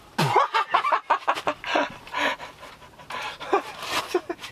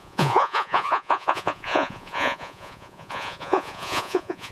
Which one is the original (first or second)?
first